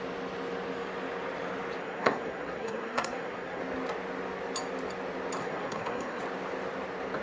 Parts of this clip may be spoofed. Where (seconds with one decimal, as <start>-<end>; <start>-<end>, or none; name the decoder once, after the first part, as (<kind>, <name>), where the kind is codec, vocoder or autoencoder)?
1.8-3.6 (codec, SNAC); 5.4-6.2